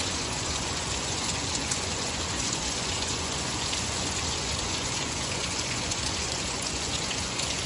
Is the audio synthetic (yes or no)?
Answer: yes